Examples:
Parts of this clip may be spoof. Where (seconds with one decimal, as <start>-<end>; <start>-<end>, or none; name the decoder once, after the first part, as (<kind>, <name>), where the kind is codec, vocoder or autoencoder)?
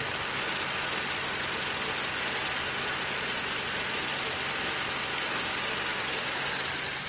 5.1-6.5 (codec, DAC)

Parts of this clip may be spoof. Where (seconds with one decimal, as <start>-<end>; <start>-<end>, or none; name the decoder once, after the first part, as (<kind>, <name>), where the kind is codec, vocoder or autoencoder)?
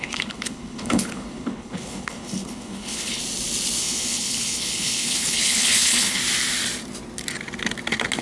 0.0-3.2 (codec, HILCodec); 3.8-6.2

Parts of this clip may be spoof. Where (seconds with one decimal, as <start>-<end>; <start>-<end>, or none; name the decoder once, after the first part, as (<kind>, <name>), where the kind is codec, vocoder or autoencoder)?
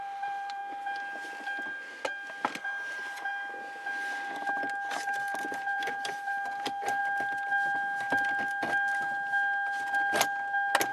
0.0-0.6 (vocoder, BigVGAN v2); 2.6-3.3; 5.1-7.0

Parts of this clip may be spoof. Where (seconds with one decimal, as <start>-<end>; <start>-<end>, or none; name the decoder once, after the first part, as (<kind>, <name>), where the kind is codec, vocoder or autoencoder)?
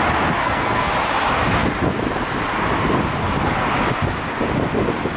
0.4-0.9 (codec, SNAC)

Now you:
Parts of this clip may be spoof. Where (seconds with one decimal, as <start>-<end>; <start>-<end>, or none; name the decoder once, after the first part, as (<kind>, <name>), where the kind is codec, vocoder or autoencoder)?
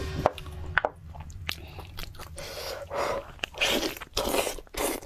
none